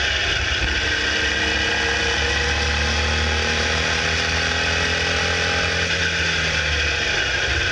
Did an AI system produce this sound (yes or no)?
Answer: no